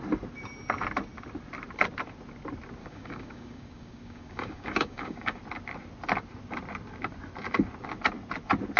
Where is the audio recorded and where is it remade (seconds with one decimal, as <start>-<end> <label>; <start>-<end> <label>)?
0.0-2.8 recorded; 2.8-5.4 remade; 5.4-8.8 recorded

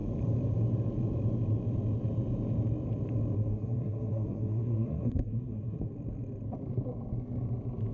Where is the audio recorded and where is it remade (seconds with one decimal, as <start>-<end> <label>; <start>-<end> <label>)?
0.0-3.5 recorded; 3.5-5.8 remade; 5.8-7.9 recorded

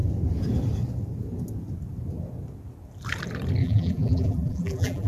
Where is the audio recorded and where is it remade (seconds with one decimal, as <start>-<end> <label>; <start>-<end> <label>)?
0.0-3.6 recorded; 3.6-5.1 remade

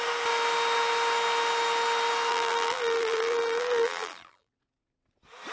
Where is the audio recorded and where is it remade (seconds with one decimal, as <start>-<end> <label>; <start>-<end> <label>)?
0.0-2.3 recorded; 2.3-4.5 remade; 4.5-5.5 recorded

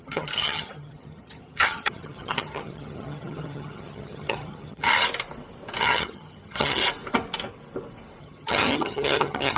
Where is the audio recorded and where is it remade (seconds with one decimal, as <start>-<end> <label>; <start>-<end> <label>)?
0.0-4.9 remade; 4.9-5.8 recorded; 5.8-6.8 remade; 6.8-8.2 recorded; 8.2-9.6 remade